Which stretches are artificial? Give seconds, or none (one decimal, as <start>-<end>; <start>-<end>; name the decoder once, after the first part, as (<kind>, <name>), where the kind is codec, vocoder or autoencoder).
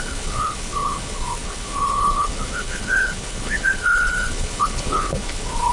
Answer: 0.0-5.7 (codec, HILCodec)